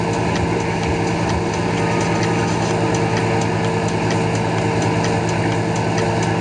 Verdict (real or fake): real